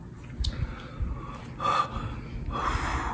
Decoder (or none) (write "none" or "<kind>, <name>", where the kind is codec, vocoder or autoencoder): none